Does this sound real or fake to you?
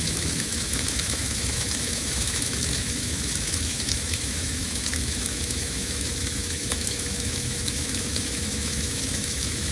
fake